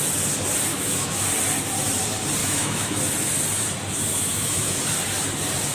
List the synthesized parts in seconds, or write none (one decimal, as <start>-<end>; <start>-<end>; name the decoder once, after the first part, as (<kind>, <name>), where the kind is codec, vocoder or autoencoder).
0.7-1.3 (autoencoder, DAC-VAE); 2.4-3.0; 4.1-4.8